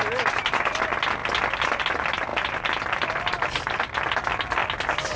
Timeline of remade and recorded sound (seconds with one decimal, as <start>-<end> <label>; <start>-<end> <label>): 0.0-5.2 recorded